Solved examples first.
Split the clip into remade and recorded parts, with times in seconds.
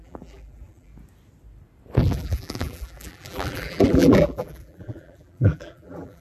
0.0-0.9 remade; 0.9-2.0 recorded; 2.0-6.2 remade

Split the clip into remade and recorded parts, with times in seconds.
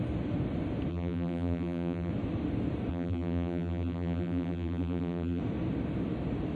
0.0-0.9 recorded; 0.9-2.1 remade; 2.1-2.9 recorded; 2.9-5.4 remade; 5.4-6.6 recorded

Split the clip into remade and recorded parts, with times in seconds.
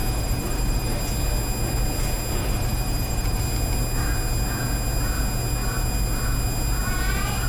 0.0-1.0 remade; 1.0-2.4 recorded; 2.4-3.4 remade; 3.4-7.5 recorded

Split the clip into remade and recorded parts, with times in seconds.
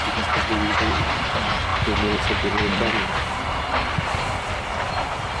0.0-5.4 remade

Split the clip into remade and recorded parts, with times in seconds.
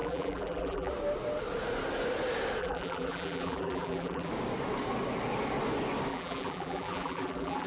0.0-0.9 remade; 0.9-2.6 recorded; 2.6-4.3 remade; 4.3-6.1 recorded; 6.1-7.7 remade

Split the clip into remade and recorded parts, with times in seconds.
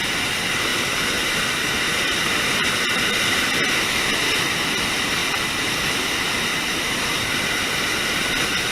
0.0-0.7 recorded; 0.7-2.2 remade; 2.2-6.5 recorded; 6.5-7.0 remade; 7.0-8.7 recorded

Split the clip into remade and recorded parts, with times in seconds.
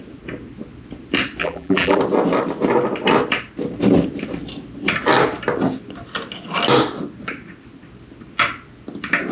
0.0-1.4 recorded; 1.4-2.0 remade; 2.0-9.3 recorded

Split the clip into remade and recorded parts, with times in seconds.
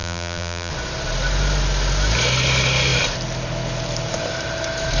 0.0-0.7 remade; 0.7-5.0 recorded